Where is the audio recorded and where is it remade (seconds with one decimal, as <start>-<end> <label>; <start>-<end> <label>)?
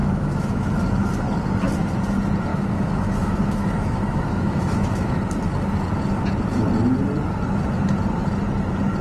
0.0-0.7 remade; 0.7-2.5 recorded; 2.5-5.1 remade; 5.1-9.0 recorded